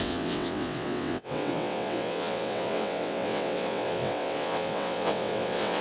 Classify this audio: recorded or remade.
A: remade